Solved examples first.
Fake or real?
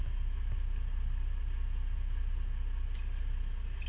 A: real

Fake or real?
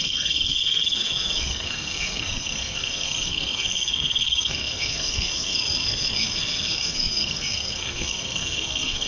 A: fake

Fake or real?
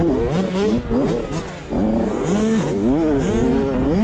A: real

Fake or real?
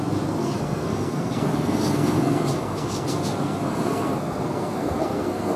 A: fake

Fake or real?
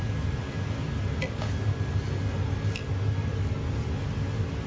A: real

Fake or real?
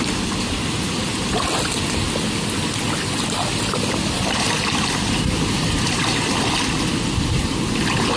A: real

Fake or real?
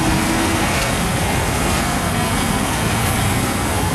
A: fake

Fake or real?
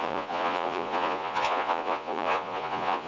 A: fake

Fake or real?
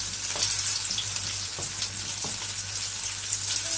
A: real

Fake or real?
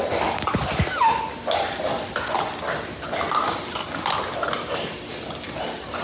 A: real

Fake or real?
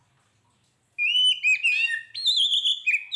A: real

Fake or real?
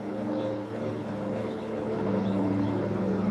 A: fake